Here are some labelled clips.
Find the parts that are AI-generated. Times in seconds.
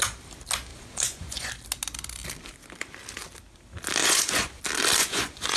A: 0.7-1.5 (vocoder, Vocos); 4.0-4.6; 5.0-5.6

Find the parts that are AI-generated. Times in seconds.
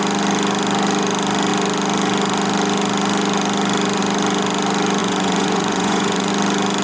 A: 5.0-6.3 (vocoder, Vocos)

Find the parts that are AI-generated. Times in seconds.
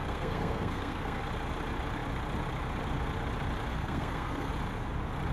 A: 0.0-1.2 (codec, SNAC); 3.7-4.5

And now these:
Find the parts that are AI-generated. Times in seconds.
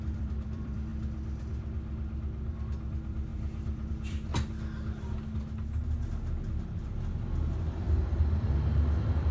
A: 0.0-0.9 (vocoder, BigVGAN v2); 2.5-4.3; 7.5-9.3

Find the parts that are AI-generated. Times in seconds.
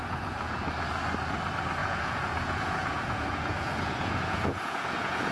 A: 0.0-0.6 (vocoder, Vocos); 1.8-5.3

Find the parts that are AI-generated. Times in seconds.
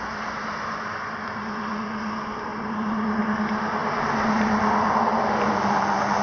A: none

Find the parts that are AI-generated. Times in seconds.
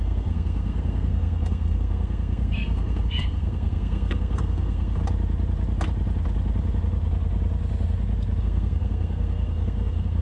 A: 0.0-5.0 (codec, SNAC); 8.4-10.2